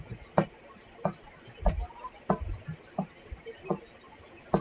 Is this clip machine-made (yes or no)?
no